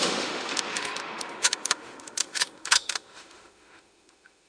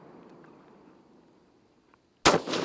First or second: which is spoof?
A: first